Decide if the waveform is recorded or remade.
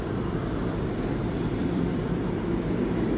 remade